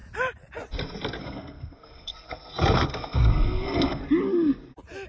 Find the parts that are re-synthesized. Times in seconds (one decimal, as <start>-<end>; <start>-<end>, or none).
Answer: 1.2-4.0